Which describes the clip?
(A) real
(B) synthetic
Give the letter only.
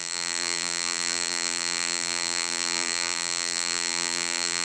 B